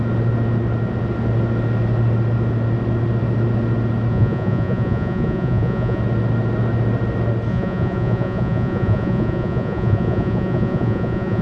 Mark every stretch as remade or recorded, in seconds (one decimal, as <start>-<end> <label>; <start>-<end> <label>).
0.0-4.1 recorded; 4.1-6.0 remade; 6.0-7.5 recorded; 7.5-11.4 remade